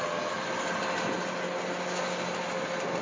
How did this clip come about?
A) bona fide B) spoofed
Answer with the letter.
A